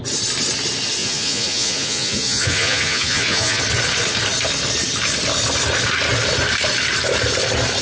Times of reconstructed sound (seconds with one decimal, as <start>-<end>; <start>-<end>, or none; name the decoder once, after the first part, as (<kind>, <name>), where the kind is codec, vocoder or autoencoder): 1.0-3.6 (vocoder, Vocos)